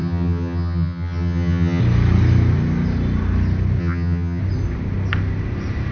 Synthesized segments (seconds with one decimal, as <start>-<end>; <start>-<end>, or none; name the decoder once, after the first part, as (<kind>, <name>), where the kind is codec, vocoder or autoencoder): 0.0-1.8 (vocoder, HiFi-GAN); 3.8-4.4